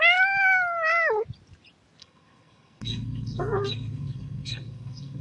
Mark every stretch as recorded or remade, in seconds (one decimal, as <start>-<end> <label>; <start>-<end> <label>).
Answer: 0.0-2.0 recorded; 2.0-5.2 remade